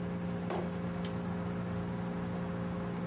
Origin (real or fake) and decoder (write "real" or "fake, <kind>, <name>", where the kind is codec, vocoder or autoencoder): real